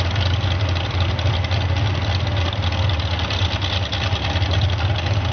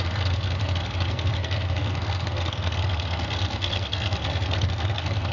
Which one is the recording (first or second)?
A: first